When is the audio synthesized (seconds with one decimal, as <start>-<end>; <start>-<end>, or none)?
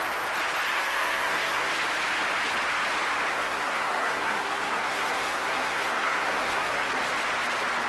0.7-1.7; 3.3-6.9